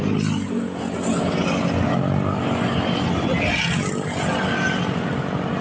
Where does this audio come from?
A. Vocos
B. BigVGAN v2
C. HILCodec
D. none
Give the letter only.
D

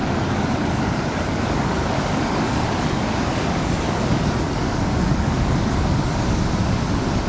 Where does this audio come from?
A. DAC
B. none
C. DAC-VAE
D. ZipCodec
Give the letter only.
A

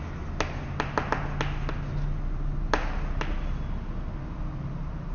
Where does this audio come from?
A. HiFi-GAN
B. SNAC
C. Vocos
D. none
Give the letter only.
D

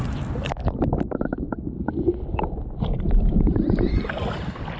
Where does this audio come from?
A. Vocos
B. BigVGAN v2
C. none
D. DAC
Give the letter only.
C